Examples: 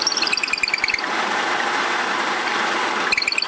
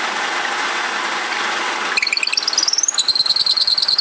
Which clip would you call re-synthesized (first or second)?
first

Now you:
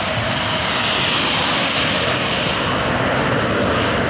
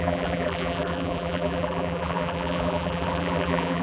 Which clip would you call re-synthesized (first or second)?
second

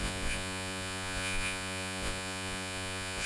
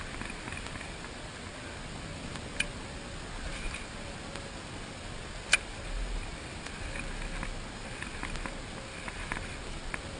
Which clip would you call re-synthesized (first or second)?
first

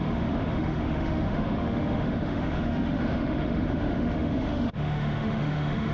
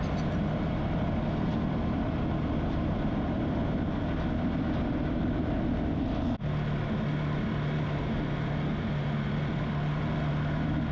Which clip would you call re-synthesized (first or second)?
first